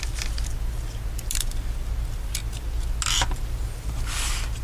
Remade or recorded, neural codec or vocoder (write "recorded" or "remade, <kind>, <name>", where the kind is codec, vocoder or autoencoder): recorded